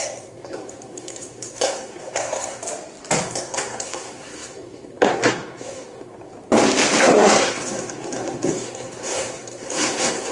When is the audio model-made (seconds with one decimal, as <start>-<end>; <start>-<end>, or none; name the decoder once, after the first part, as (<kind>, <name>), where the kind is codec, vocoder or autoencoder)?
0.0-2.6 (codec, SNAC); 3.2-6.3; 7.0-10.3

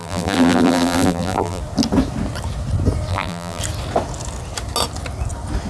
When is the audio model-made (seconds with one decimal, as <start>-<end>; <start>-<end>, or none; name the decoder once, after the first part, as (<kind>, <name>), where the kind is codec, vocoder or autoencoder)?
0.0-1.6 (vocoder, BigVGAN v2); 3.1-3.6

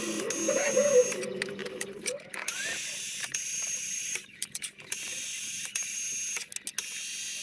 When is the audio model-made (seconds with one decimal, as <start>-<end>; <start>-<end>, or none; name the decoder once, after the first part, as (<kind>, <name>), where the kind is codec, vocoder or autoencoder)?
1.6-6.0 (vocoder, BigVGAN v2)